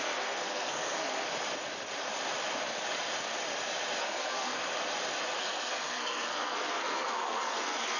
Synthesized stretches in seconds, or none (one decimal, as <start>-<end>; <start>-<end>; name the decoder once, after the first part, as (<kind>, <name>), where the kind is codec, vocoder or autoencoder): 0.0-1.3 (codec, SNAC); 4.0-4.6; 5.4-8.0